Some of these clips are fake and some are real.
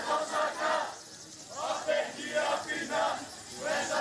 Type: real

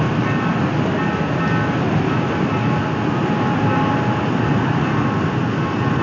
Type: real